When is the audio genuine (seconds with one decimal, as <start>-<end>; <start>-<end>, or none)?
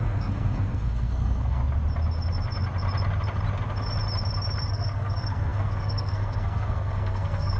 1.6-4.7